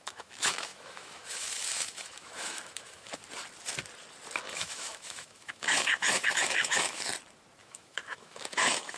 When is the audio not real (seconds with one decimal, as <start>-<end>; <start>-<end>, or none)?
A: 0.0-3.2; 4.5-7.1; 7.6-9.0